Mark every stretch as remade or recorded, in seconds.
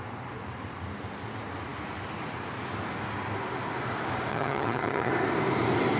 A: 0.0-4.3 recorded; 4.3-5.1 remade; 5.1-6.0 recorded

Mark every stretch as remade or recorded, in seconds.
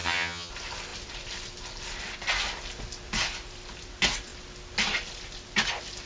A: 0.0-0.5 remade; 0.5-6.1 recorded